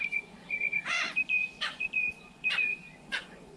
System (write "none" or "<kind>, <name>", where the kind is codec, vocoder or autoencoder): vocoder, Vocos